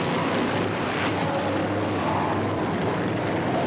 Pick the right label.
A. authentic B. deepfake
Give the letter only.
A